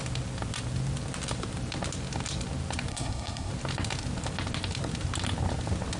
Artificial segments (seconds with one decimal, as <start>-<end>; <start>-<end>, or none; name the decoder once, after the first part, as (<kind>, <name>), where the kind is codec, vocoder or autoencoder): 2.9-3.5 (codec, SNAC)